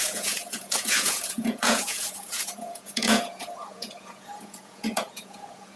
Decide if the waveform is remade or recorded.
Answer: remade